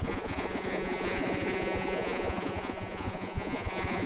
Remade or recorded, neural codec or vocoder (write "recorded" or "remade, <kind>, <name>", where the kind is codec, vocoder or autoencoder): remade, vocoder, Vocos